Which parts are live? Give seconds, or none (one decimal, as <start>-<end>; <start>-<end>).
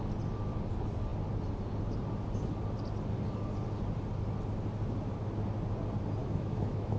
0.0-6.2